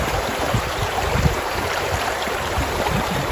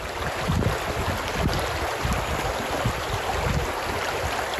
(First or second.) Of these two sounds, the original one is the second